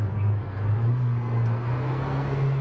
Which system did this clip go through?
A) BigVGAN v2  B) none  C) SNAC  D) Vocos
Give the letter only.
C